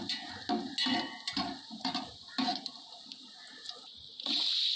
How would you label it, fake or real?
real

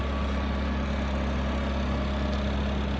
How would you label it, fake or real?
real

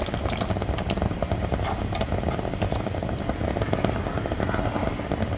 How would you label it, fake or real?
real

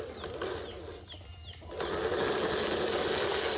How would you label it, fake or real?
real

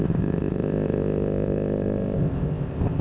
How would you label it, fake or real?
fake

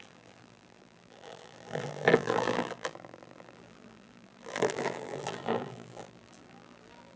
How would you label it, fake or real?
fake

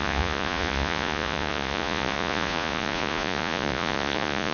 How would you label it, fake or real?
fake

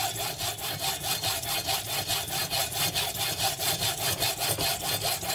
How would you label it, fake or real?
real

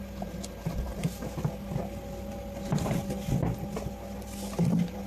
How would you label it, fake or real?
real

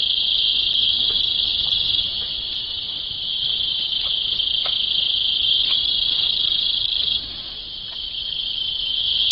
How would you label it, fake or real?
real